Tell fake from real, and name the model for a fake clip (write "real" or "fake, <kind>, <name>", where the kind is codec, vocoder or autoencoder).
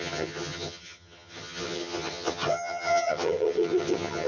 fake, vocoder, HiFi-GAN